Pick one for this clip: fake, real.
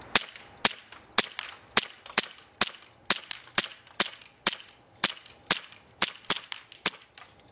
real